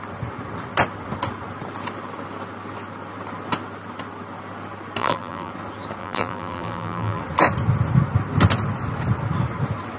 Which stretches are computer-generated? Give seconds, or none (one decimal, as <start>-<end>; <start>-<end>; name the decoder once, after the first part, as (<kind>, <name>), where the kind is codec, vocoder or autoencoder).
5.0-5.5 (vocoder, BigVGAN v2); 6.0-7.2